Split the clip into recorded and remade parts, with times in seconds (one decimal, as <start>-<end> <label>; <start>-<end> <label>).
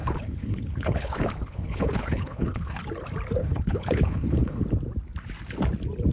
0.0-2.8 remade; 2.8-3.4 recorded; 3.4-4.6 remade; 4.6-6.1 recorded